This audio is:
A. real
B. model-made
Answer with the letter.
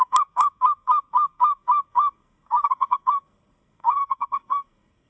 B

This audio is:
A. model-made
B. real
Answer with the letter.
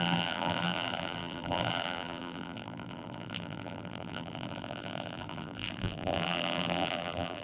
A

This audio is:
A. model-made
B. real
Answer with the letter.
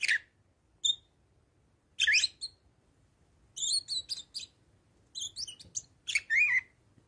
B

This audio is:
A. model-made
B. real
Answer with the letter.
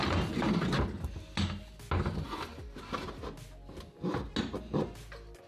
B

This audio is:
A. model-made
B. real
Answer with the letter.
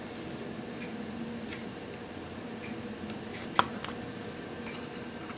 B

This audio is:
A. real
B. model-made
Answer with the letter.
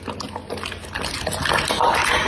A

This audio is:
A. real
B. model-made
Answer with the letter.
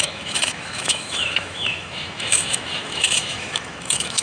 B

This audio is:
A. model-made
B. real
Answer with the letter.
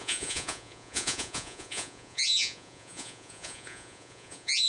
A